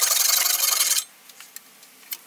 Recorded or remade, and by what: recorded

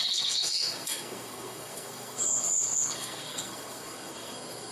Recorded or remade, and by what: remade, codec, SNAC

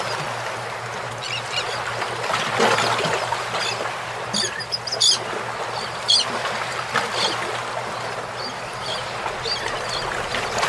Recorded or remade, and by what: recorded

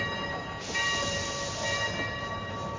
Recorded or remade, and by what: recorded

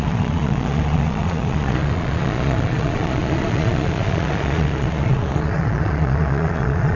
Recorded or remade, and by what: remade, vocoder, Vocos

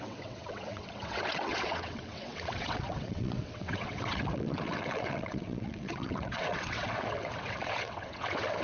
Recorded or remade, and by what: remade, vocoder, WaveNeXt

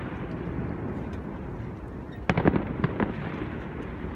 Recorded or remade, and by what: recorded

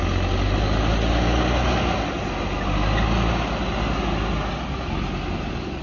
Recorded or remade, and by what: recorded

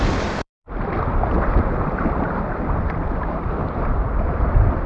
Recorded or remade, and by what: remade, vocoder, BigVGAN v2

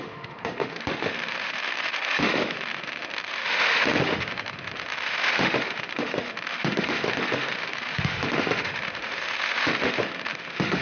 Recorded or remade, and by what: remade, autoencoder, DAC-VAE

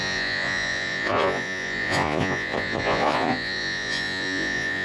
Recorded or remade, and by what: remade, vocoder, Vocos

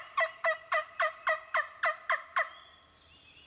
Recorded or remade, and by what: recorded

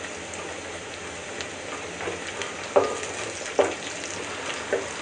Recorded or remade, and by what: recorded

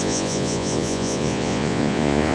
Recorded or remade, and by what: remade, vocoder, Vocos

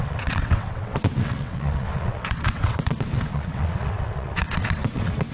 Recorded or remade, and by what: remade, vocoder, WaveNeXt